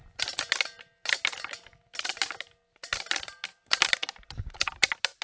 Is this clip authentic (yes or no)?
yes